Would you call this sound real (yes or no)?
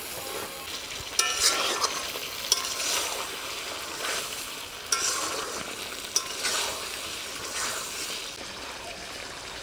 yes